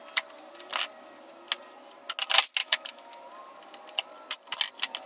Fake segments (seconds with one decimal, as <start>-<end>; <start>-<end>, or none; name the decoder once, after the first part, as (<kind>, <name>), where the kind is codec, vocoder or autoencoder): 2.6-3.2 (autoencoder, DAC-VAE)